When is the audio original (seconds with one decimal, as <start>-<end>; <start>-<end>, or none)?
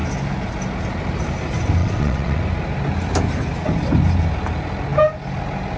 0.0-1.8; 2.4-5.8